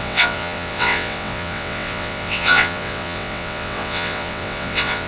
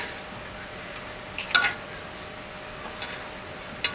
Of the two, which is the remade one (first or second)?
first